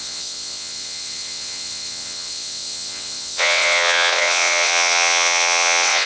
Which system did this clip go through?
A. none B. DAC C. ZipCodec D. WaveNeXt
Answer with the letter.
D